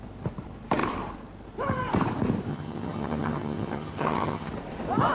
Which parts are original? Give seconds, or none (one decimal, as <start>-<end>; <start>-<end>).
0.0-2.5; 4.5-5.1